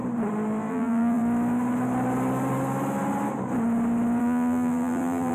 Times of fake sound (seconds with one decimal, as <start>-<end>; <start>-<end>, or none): 0.7-1.2; 4.2-5.3